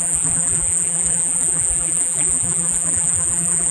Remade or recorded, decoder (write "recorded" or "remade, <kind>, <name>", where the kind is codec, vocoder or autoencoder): remade, vocoder, BigVGAN v2